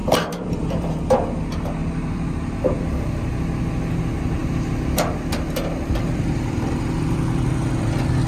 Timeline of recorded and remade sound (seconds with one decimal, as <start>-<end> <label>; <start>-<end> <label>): 0.0-1.1 remade; 1.1-1.8 recorded; 1.8-3.2 remade; 3.2-4.4 recorded; 4.4-7.9 remade; 7.9-8.3 recorded